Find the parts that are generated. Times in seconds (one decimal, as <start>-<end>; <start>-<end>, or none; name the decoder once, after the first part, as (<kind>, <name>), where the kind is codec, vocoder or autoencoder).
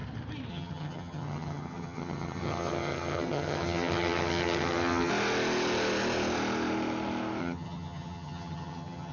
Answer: 0.5-5.1 (vocoder, HiFi-GAN); 7.4-9.1